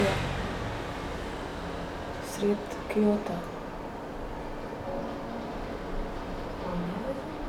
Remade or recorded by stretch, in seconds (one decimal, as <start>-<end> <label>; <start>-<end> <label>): 0.0-6.7 recorded; 6.7-7.5 remade